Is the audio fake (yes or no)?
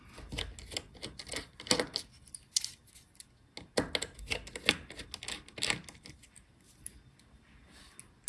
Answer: no